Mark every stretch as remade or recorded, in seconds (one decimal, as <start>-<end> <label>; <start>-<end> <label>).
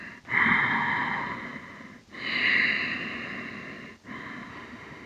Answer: 0.0-4.5 recorded; 4.5-5.1 remade